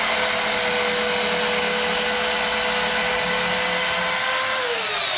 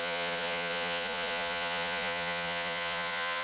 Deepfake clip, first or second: second